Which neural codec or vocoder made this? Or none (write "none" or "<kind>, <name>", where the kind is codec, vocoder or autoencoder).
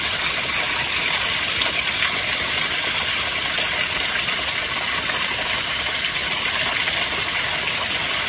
none